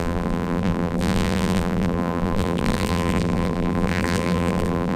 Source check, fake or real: fake